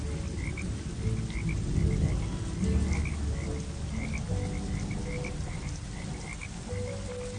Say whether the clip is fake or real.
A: real